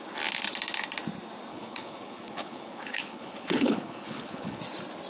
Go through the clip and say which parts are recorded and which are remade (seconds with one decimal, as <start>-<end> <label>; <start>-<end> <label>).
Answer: 0.0-1.5 recorded; 1.5-4.6 remade; 4.6-5.1 recorded